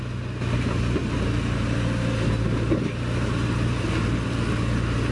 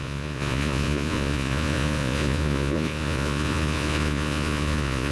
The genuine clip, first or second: first